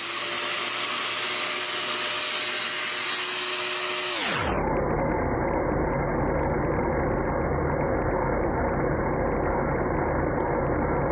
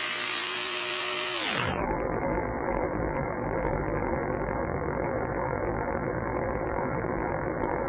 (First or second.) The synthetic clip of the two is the second